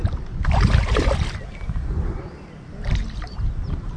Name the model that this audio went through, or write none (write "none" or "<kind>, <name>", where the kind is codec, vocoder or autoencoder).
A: none